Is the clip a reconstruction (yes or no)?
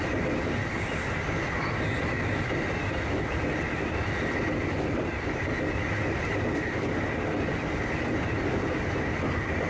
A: no